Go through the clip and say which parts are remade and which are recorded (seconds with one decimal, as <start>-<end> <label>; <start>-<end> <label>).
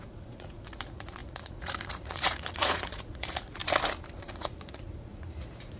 0.0-3.6 remade; 3.6-4.2 recorded; 4.2-5.8 remade